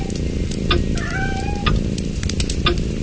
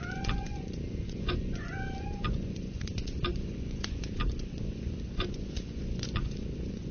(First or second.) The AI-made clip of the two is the second